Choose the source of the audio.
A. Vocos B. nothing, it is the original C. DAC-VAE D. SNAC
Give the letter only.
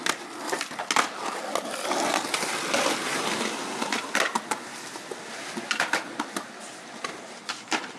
B